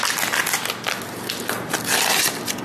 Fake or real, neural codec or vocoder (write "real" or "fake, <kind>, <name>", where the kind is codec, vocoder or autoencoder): real